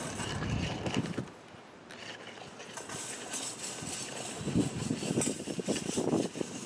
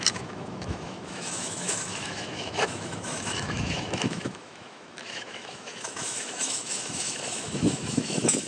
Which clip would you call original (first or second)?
first